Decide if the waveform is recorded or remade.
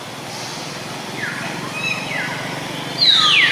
recorded